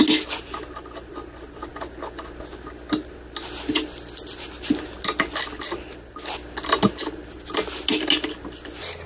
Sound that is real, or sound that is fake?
real